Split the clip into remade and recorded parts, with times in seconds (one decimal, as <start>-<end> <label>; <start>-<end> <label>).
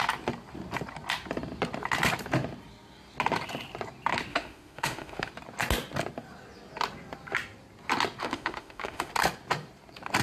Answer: 0.0-4.3 recorded; 4.3-5.3 remade; 5.3-8.2 recorded; 8.2-9.1 remade; 9.1-10.2 recorded